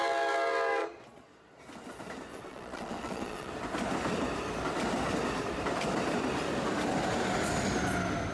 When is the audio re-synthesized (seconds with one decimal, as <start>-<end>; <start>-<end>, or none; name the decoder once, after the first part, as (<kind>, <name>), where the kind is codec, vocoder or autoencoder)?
0.8-1.6 (vocoder, Vocos); 2.3-3.5